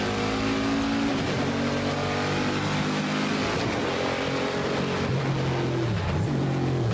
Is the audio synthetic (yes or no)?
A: no